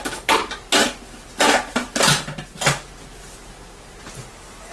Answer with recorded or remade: recorded